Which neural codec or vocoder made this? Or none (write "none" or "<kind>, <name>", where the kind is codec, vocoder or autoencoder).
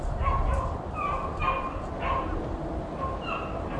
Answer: none